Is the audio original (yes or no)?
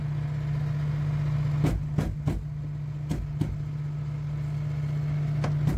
yes